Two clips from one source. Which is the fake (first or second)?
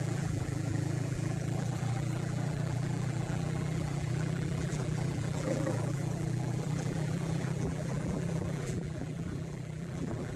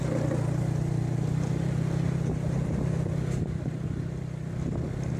first